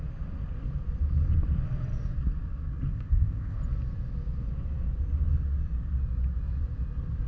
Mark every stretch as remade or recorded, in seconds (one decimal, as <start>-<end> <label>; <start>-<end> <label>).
0.0-2.9 recorded; 2.9-3.6 remade; 3.6-7.3 recorded